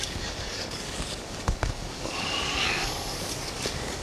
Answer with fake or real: fake